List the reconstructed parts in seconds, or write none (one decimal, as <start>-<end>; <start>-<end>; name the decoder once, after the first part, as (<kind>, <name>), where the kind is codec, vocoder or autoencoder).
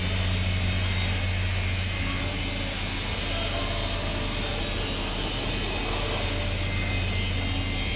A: none